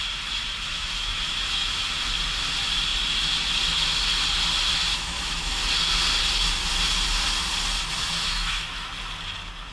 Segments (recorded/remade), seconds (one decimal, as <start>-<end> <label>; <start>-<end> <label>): 0.0-0.7 recorded; 0.7-1.9 remade; 1.9-4.9 recorded; 4.9-5.6 remade; 5.6-8.0 recorded; 8.0-8.9 remade; 8.9-9.7 recorded